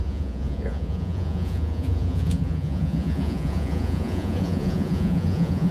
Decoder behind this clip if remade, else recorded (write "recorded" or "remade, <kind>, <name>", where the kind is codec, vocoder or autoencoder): remade, vocoder, Vocos